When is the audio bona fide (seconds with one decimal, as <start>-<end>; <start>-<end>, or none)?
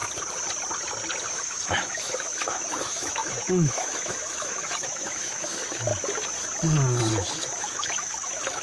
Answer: 0.0-1.3; 5.9-7.1